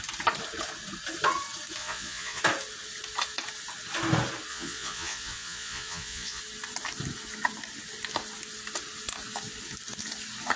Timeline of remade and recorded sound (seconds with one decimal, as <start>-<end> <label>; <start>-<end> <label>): 0.0-1.8 recorded; 1.8-2.4 remade; 2.4-4.5 recorded; 4.5-6.4 remade; 6.4-10.6 recorded